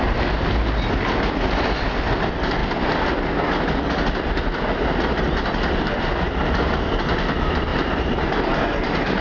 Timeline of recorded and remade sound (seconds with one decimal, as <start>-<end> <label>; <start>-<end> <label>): 0.0-7.7 recorded; 7.7-8.3 remade; 8.3-9.2 recorded